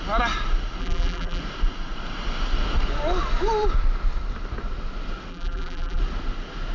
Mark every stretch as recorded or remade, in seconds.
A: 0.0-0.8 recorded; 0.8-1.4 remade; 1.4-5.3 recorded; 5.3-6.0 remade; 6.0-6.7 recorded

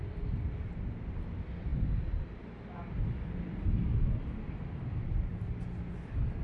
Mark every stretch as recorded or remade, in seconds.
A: 0.0-1.7 remade; 1.7-2.9 recorded; 2.9-5.3 remade; 5.3-5.9 recorded; 5.9-6.4 remade